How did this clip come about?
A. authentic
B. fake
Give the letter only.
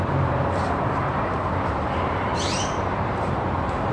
B